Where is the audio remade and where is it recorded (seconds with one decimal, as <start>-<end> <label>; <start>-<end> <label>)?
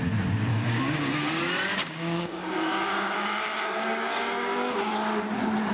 0.0-0.5 recorded; 0.5-1.4 remade; 1.4-1.8 recorded; 1.8-4.9 remade; 4.9-5.7 recorded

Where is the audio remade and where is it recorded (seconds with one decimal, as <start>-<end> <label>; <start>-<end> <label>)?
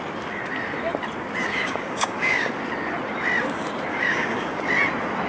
0.0-1.4 recorded; 1.4-2.5 remade; 2.5-3.9 recorded; 3.9-4.6 remade; 4.6-5.3 recorded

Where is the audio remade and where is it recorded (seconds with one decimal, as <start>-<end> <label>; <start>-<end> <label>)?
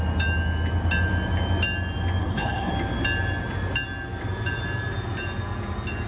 0.0-2.2 recorded; 2.2-2.7 remade; 2.7-6.1 recorded